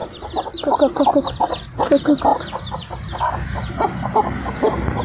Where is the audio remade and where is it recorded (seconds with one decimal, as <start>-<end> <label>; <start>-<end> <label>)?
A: 0.0-5.0 recorded